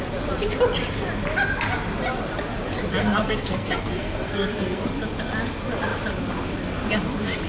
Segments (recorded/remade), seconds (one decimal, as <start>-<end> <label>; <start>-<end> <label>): 0.0-3.0 recorded; 3.0-4.8 remade; 4.8-7.5 recorded